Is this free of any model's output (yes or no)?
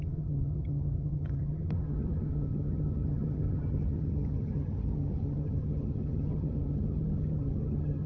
no